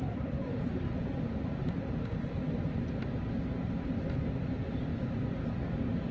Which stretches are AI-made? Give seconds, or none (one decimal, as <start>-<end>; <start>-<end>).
none